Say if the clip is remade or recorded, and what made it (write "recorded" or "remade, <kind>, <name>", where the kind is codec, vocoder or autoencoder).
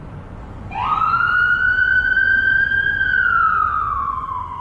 remade, vocoder, Vocos